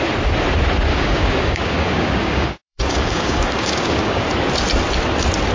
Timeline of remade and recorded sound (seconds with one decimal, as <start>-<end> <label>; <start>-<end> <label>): 0.0-0.9 recorded; 0.9-4.2 remade; 4.2-5.5 recorded